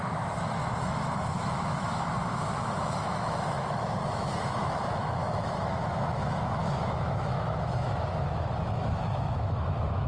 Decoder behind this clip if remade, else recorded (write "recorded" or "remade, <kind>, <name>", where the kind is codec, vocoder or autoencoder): remade, autoencoder, DAC-VAE